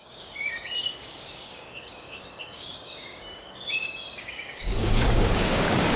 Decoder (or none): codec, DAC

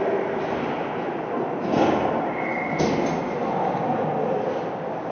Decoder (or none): none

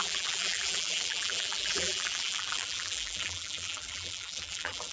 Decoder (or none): vocoder, BigVGAN v2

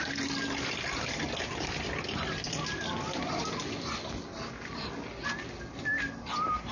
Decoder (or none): none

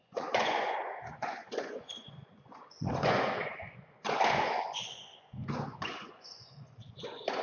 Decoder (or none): vocoder, Vocos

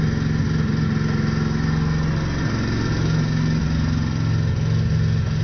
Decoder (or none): none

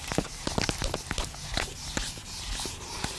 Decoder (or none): none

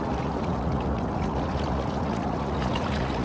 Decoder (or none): vocoder, Vocos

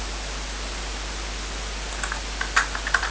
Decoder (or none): none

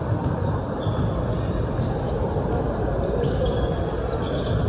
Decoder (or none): none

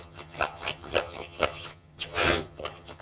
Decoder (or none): vocoder, HiFi-GAN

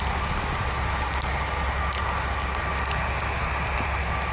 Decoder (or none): none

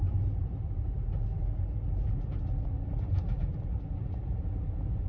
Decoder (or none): vocoder, BigVGAN v2